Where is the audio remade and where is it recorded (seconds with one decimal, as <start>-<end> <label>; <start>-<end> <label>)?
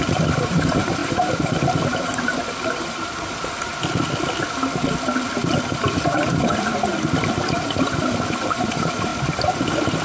0.0-3.7 remade; 3.7-5.5 recorded; 5.5-6.7 remade; 6.7-8.4 recorded; 8.4-10.0 remade